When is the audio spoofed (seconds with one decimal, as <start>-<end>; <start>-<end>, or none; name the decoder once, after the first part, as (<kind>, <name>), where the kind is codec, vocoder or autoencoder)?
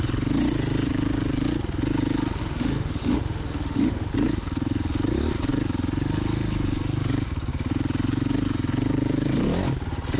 2.4-4.1 (autoencoder, DAC-VAE)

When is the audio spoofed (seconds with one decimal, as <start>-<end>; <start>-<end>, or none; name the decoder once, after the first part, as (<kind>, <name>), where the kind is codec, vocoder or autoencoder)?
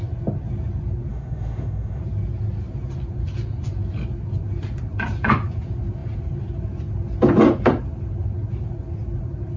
1.1-2.0 (autoencoder, DAC-VAE)